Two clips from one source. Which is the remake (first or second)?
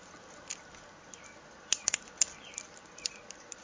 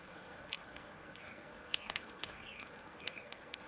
second